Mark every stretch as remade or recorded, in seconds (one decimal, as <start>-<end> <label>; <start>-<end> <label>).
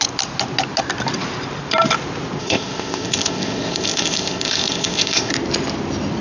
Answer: 0.0-2.4 recorded; 2.4-5.3 remade; 5.3-6.2 recorded